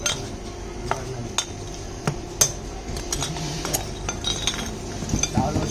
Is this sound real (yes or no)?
yes